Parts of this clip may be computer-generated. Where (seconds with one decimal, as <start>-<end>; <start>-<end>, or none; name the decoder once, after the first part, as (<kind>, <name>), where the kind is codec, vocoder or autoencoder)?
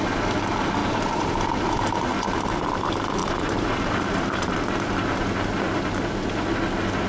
0.8-2.1 (vocoder, BigVGAN v2); 3.2-4.6